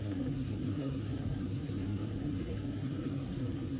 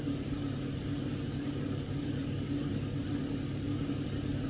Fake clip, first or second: first